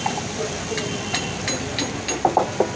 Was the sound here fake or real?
real